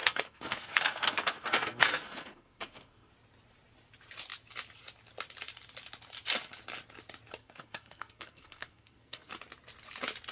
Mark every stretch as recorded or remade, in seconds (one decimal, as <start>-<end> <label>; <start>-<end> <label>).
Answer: 0.0-3.1 remade; 3.1-7.4 recorded; 7.4-9.3 remade; 9.3-10.3 recorded